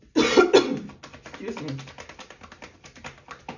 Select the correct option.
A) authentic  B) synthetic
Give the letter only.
A